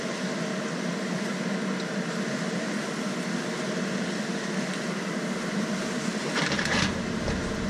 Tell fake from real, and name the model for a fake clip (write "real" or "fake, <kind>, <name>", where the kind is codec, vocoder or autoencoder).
real